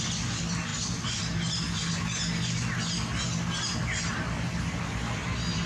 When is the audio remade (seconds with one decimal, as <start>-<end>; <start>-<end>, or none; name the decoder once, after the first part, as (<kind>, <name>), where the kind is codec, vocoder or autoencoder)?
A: none